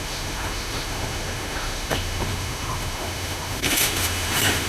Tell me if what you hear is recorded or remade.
remade